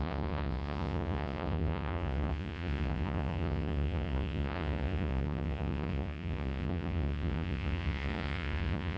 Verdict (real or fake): fake